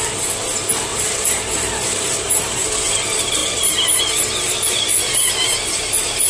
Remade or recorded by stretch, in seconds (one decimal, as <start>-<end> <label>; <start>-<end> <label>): 0.0-0.9 recorded; 0.9-2.6 remade; 2.6-3.4 recorded; 3.4-4.0 remade; 4.0-6.3 recorded